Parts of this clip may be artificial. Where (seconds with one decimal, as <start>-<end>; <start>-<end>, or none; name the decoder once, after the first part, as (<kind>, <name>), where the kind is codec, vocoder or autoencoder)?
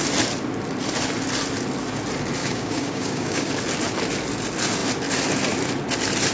2.4-3.5 (codec, DAC)